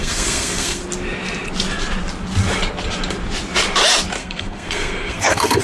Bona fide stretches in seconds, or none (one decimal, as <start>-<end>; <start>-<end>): 0.8-4.2